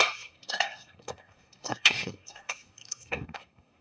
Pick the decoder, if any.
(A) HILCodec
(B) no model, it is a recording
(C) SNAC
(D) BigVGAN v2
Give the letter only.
C